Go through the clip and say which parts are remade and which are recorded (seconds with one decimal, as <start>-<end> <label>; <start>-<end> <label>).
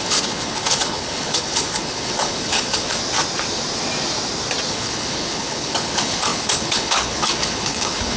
0.0-3.0 remade; 3.0-4.7 recorded; 4.7-8.2 remade